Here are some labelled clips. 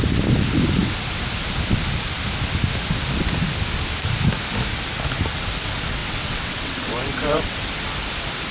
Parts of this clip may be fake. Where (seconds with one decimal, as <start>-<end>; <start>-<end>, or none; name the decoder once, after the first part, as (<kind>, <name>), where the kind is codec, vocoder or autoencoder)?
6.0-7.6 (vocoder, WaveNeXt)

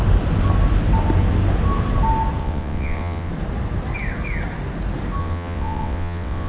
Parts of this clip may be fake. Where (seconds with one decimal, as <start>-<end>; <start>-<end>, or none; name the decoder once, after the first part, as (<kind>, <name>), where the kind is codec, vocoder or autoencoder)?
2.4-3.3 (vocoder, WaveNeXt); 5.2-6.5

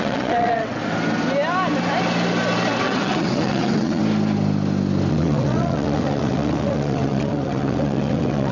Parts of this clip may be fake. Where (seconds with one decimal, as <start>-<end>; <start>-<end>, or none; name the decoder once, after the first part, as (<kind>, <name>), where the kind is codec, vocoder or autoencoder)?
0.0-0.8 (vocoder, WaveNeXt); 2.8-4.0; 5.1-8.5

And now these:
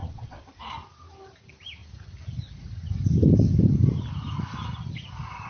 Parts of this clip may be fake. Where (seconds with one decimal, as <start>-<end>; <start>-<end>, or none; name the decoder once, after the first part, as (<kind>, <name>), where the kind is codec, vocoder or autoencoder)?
0.0-0.5 (vocoder, WaveNeXt)

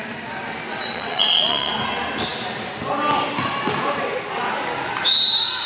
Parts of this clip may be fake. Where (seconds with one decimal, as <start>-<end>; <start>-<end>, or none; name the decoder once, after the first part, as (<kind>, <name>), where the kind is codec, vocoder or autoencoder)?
0.7-1.7 (vocoder, WaveNeXt)

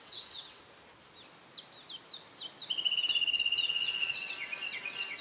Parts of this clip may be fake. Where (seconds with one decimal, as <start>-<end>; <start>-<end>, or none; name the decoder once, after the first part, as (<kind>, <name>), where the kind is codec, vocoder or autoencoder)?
0.0-0.6 (vocoder, WaveNeXt); 3.7-5.2

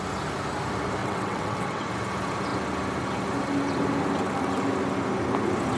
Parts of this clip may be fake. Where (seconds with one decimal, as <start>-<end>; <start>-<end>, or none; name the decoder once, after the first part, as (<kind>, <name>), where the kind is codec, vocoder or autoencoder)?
1.0-1.9 (vocoder, WaveNeXt)

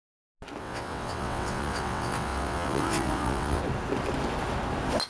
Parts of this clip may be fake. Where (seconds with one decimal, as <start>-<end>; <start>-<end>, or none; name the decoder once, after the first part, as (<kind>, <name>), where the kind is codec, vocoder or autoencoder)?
0.6-3.6 (vocoder, WaveNeXt)